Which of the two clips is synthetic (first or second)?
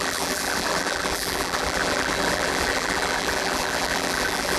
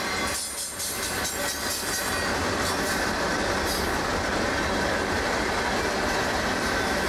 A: first